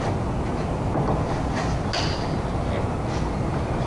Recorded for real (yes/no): yes